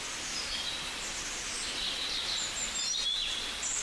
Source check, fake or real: real